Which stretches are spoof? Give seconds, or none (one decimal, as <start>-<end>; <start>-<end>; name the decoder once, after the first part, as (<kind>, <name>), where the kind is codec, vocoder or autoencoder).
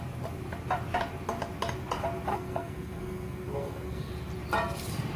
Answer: 2.3-4.1 (codec, SNAC)